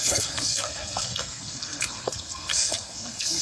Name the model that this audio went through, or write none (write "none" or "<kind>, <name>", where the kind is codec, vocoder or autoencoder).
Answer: codec, SNAC